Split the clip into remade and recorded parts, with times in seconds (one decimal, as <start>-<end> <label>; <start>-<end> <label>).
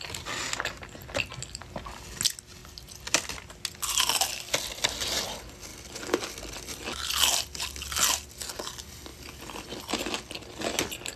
0.0-1.6 recorded; 1.6-2.2 remade; 2.2-2.6 recorded; 2.6-3.6 remade; 3.6-11.2 recorded